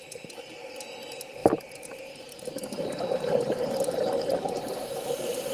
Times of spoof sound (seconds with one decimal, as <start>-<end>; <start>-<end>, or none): 1.4-4.7